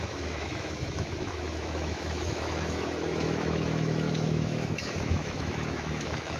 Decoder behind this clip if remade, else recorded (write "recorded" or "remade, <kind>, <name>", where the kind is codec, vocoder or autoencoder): remade, autoencoder, DAC-VAE